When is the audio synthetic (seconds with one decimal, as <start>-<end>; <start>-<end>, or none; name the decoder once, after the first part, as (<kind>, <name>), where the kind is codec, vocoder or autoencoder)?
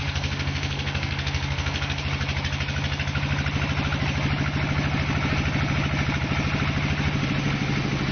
0.0-2.0 (codec, SNAC)